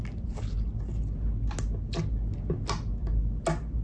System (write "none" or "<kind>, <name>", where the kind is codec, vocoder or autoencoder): none